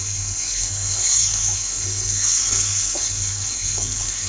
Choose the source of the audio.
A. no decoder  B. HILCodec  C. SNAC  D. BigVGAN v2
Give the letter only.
C